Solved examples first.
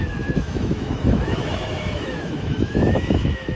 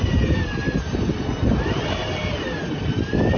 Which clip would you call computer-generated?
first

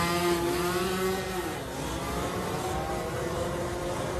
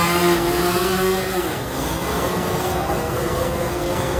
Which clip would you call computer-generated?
second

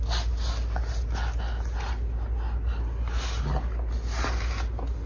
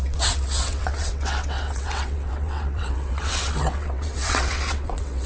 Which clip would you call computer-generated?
second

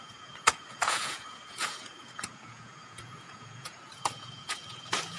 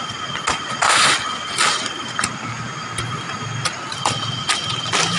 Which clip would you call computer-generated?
first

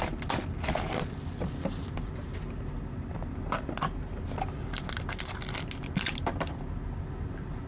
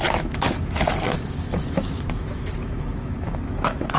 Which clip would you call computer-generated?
second